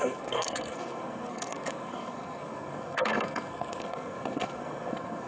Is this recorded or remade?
remade